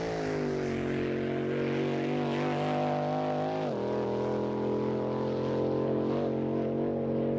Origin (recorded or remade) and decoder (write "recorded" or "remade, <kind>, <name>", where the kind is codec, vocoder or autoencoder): recorded